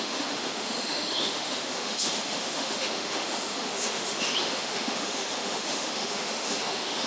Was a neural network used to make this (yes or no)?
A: yes